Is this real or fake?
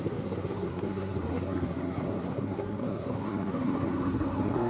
fake